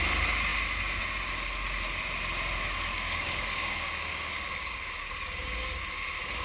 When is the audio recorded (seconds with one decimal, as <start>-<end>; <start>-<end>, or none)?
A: 0.0-2.9